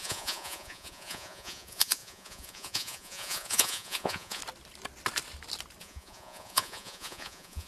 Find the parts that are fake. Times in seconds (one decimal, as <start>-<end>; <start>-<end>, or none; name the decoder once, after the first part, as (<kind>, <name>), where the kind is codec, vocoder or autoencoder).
0.0-4.4 (vocoder, Vocos); 5.8-7.7